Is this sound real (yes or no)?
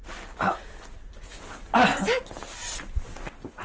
yes